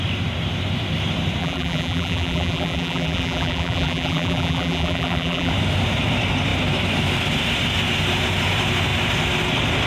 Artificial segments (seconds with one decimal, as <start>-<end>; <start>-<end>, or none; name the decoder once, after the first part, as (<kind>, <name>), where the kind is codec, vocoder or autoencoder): 1.4-5.5 (vocoder, BigVGAN v2)